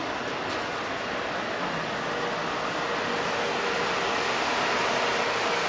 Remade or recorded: recorded